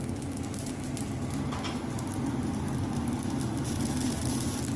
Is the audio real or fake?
real